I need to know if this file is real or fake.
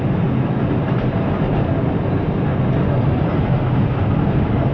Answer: real